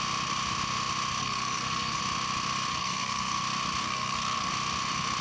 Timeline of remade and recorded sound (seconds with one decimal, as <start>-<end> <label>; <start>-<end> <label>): 0.0-1.2 recorded; 1.2-2.0 remade; 2.0-2.7 recorded; 2.7-3.4 remade; 3.4-3.8 recorded; 3.8-4.5 remade; 4.5-5.2 recorded